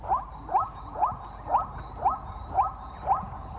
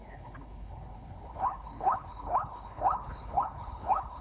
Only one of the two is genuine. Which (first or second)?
first